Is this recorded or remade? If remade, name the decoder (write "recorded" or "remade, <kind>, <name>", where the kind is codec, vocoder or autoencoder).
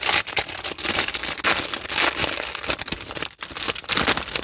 recorded